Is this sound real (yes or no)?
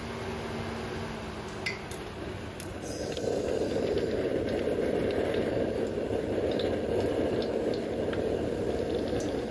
yes